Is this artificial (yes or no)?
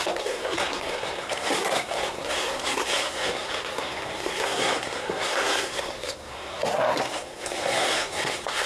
yes